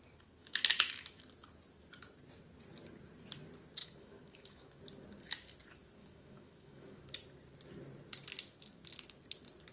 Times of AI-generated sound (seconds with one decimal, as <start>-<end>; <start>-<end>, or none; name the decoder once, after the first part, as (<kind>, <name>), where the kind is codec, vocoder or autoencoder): 0.4-1.2 (autoencoder, DAC-VAE); 3.8-4.8; 6.0-7.0